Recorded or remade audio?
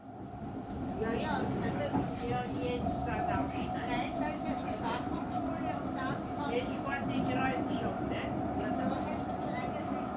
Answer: recorded